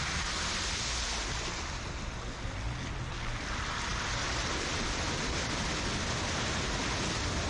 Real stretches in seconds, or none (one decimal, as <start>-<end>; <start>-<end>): 0.0-7.5